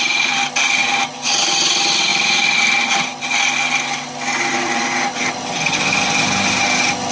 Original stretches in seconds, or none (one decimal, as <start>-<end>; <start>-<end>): 0.0-7.1